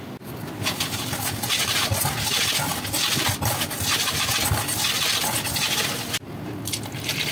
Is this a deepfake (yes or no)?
no